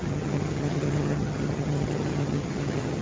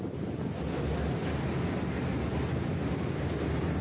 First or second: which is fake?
first